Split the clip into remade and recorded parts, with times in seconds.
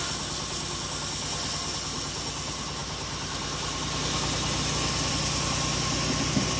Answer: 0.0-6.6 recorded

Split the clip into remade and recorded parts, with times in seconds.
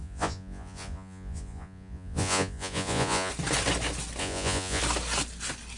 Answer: 0.0-3.3 remade; 3.3-4.2 recorded; 4.2-4.8 remade; 4.8-5.8 recorded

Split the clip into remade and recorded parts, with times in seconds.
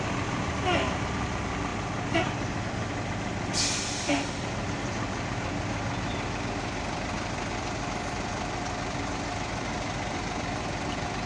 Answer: 0.0-11.3 recorded